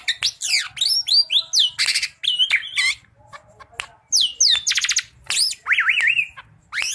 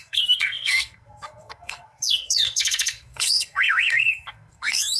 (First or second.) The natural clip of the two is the first